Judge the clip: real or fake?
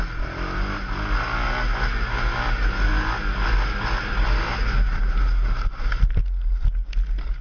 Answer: real